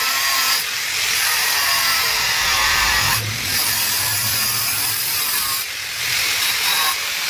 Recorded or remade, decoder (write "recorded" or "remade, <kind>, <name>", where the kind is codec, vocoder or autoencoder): remade, vocoder, BigVGAN v2